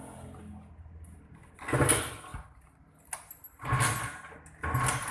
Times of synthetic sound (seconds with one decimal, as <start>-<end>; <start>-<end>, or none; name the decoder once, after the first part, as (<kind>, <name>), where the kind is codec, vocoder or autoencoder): none